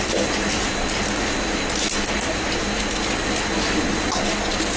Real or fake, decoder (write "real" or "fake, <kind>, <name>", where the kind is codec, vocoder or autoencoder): real